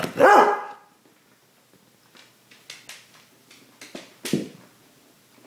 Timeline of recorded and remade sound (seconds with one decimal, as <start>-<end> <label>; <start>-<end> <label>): 0.0-5.5 recorded